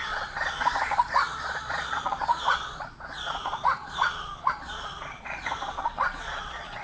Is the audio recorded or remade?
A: remade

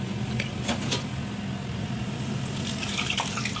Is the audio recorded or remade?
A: recorded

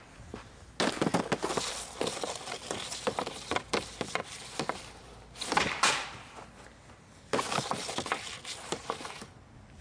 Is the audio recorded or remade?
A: recorded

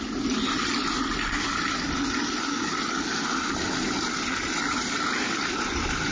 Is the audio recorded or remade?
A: recorded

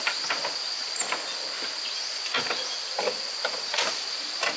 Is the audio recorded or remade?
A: recorded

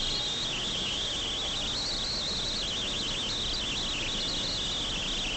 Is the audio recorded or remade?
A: recorded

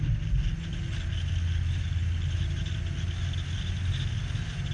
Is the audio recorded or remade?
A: recorded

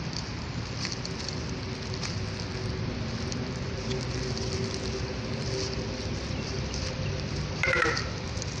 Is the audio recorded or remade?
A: recorded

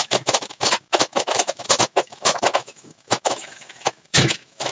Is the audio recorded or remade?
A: remade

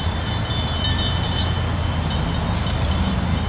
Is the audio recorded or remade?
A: recorded